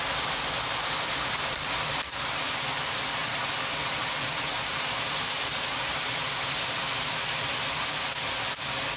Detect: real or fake real